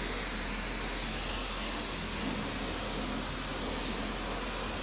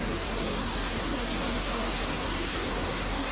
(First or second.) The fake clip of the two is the second